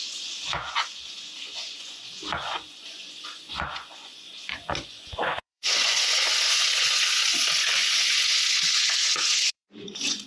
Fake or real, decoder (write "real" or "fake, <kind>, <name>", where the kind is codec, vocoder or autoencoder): fake, vocoder, Vocos